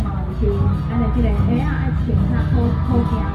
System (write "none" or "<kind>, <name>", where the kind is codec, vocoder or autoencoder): none